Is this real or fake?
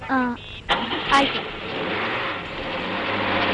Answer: real